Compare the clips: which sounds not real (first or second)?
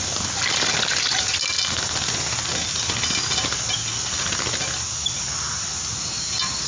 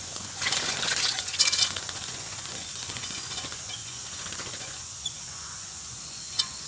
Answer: second